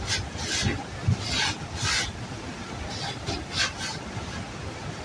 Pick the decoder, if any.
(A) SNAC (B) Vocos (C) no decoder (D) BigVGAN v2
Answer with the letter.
C